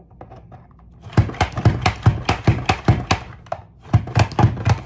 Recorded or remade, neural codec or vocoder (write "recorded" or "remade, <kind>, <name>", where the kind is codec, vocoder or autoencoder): recorded